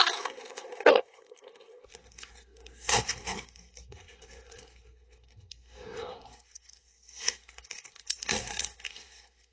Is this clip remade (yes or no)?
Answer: yes